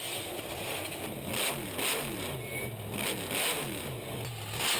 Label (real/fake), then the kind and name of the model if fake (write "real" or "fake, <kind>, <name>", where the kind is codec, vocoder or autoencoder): real